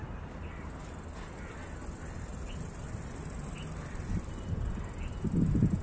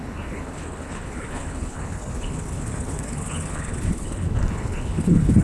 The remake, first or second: second